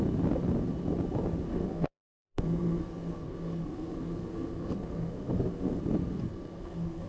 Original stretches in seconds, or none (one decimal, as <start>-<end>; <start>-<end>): 0.0-1.5; 5.8-6.3